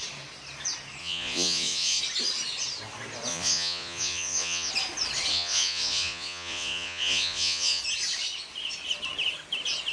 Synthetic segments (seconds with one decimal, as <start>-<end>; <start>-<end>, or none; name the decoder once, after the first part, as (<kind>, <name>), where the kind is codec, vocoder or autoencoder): 1.0-2.0 (vocoder, Vocos); 3.3-4.7; 5.3-7.8